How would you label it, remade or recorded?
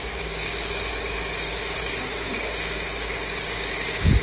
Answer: remade